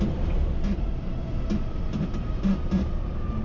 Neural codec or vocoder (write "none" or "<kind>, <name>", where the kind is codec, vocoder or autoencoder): none